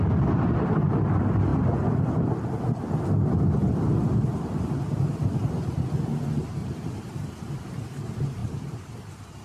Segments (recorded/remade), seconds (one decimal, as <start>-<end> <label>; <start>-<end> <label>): 0.0-6.6 recorded; 6.6-7.6 remade; 7.6-8.4 recorded; 8.4-9.0 remade; 9.0-9.4 recorded